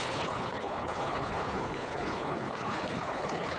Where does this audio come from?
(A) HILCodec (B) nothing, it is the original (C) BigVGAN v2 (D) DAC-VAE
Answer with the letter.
A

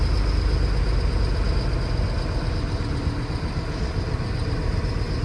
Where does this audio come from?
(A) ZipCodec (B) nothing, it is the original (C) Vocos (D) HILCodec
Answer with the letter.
B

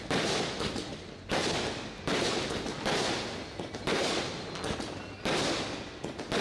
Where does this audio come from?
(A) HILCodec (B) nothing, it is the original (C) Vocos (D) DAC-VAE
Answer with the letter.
B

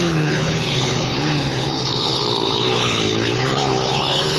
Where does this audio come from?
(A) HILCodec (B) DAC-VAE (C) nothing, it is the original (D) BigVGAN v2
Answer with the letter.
A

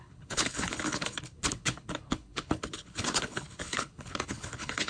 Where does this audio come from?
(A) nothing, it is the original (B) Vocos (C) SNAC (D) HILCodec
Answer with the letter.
D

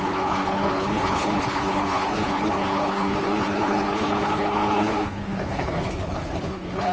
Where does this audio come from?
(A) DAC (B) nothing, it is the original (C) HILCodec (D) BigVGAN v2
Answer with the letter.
C